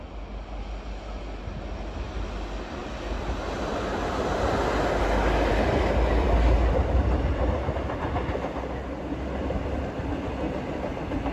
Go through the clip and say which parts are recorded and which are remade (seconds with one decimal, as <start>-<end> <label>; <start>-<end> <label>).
0.0-11.3 recorded